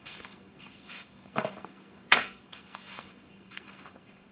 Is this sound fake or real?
fake